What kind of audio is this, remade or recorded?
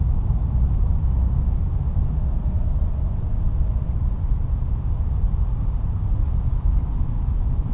recorded